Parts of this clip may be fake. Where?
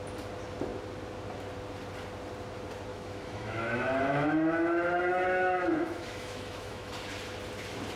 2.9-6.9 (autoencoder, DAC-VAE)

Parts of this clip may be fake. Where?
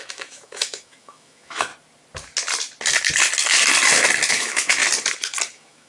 0.0-1.7 (autoencoder, DAC-VAE); 4.3-4.8; 5.5-5.9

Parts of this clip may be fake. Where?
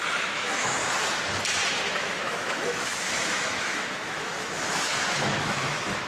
0.0-0.8 (autoencoder, DAC-VAE); 2.0-6.1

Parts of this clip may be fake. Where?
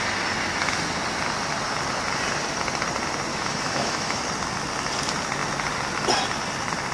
3.3-4.2 (autoencoder, DAC-VAE)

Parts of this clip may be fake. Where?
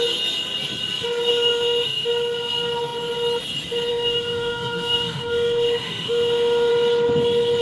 1.3-2.1 (autoencoder, DAC-VAE); 3.9-6.7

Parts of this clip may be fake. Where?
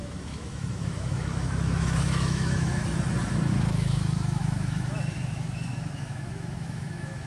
0.0-2.8 (autoencoder, DAC-VAE); 3.5-7.3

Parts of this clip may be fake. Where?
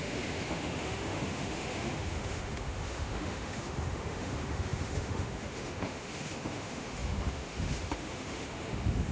0.0-9.1 (autoencoder, DAC-VAE)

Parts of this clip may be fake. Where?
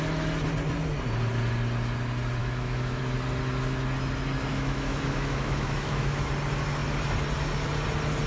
2.4-3.0 (autoencoder, DAC-VAE); 4.5-6.3